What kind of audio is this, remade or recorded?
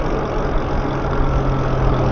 recorded